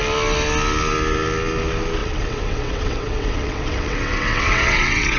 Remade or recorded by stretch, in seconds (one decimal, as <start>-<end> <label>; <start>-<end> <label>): 0.0-2.0 recorded; 2.0-5.2 remade